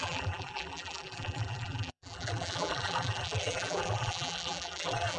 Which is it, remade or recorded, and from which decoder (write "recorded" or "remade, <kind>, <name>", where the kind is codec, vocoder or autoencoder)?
remade, vocoder, BigVGAN v2